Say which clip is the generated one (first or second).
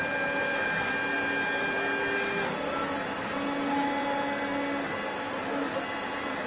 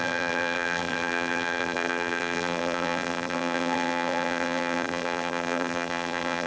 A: second